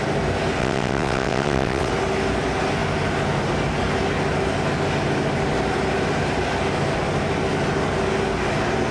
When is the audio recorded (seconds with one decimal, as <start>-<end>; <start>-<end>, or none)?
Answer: 0.0-0.6; 1.9-8.9